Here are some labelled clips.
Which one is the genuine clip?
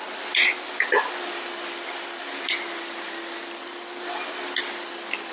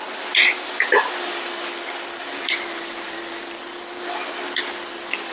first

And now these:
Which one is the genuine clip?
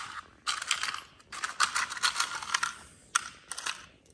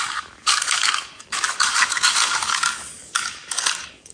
first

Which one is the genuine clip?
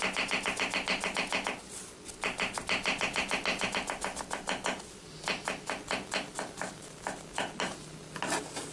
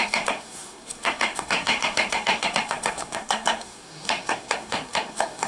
first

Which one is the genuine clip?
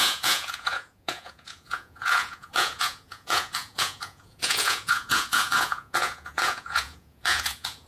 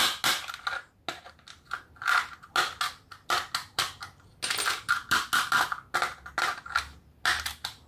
second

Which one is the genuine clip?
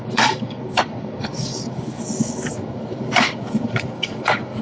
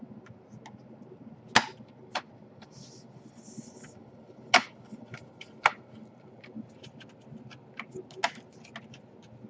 second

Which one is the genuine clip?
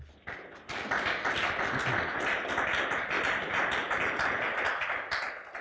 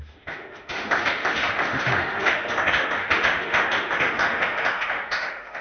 first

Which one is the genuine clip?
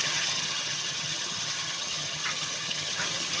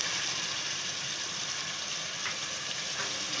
second